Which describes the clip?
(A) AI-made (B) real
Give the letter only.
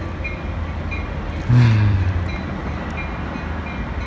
B